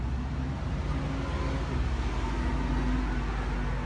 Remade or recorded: recorded